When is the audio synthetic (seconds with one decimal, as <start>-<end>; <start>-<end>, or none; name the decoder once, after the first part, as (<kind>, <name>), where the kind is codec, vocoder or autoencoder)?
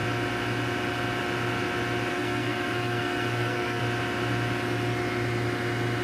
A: 2.1-3.8 (codec, SNAC)